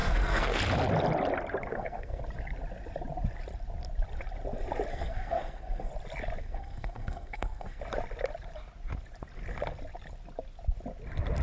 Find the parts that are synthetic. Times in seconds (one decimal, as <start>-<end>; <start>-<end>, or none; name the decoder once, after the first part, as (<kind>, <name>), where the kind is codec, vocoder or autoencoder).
0.0-0.6 (codec, SNAC); 1.7-2.2; 4.9-5.9; 6.4-7.8